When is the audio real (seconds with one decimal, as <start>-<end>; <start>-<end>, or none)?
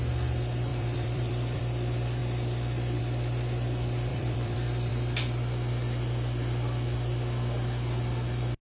0.0-0.7; 1.6-4.1; 4.9-8.7